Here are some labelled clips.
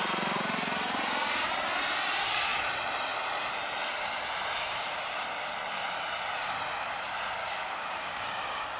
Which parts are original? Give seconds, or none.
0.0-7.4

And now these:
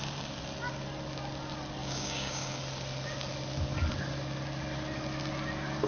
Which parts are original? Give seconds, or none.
0.0-1.8; 2.6-5.9

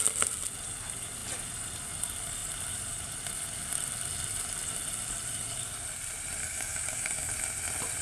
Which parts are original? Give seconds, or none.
0.0-6.4; 7.3-8.0